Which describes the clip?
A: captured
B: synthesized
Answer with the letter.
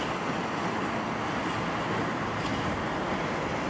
A